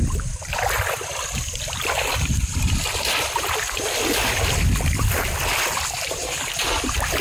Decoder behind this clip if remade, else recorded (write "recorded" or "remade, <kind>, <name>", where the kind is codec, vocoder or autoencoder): remade, vocoder, BigVGAN v2